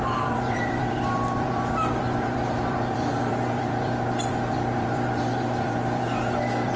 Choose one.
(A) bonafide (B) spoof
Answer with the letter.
B